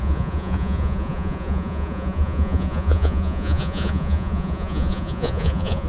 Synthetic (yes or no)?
yes